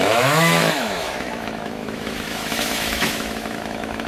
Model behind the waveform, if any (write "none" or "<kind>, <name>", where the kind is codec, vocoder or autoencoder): autoencoder, DAC-VAE